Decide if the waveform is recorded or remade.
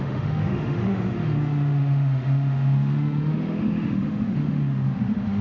remade